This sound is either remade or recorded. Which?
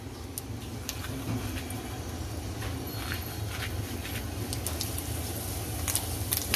recorded